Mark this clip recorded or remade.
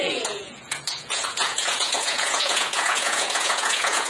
remade